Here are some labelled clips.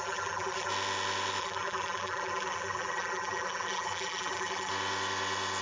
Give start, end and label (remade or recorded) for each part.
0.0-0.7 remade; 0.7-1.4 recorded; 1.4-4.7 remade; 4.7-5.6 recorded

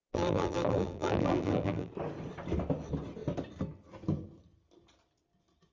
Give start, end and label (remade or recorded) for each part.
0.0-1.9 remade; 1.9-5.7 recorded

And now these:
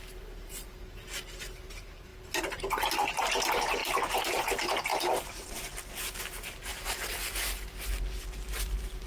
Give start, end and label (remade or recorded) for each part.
0.0-6.7 recorded; 6.7-8.0 remade; 8.0-9.1 recorded

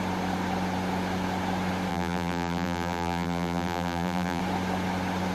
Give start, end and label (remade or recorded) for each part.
0.0-1.9 recorded; 1.9-4.4 remade; 4.4-5.3 recorded

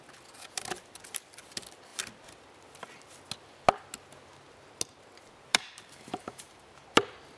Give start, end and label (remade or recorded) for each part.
0.0-5.5 recorded; 5.5-6.6 remade; 6.6-7.4 recorded